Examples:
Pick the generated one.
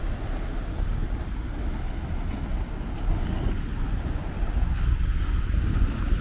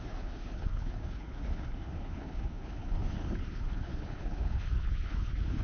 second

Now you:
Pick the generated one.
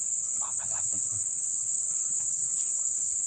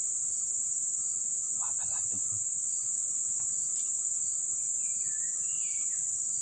first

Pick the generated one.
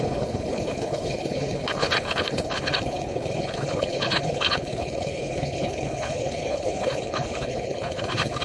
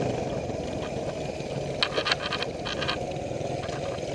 first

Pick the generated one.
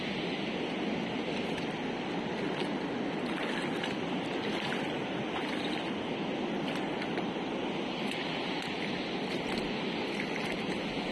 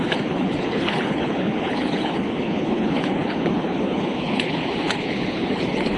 second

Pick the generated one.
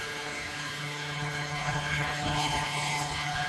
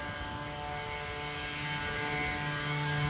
first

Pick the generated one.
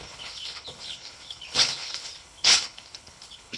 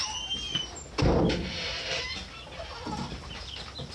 first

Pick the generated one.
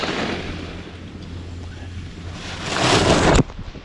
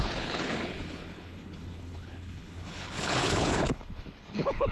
second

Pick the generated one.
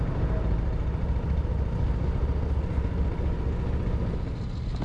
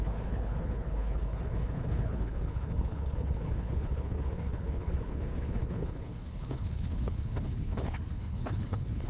second